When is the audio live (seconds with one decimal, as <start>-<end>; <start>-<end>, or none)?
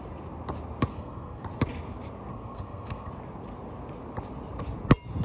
0.0-0.9; 1.4-2.3; 3.1-5.2